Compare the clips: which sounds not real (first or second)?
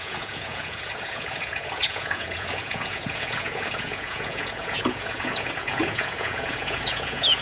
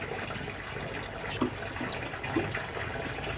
first